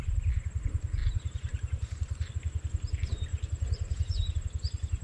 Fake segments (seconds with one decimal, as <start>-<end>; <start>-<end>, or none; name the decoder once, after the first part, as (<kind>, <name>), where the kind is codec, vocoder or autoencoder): 1.0-2.3 (vocoder, BigVGAN v2)